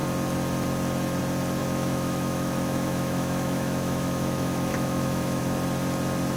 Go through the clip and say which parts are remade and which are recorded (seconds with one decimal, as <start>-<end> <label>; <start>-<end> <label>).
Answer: 0.0-1.6 recorded; 1.6-5.4 remade; 5.4-6.4 recorded